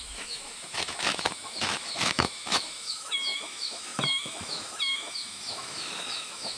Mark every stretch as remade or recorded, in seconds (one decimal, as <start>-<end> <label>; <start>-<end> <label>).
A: 0.0-6.6 remade